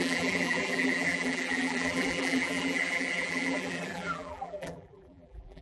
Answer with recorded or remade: remade